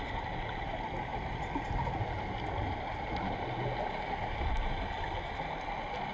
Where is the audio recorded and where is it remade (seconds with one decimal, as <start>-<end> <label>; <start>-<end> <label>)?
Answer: 0.0-6.1 recorded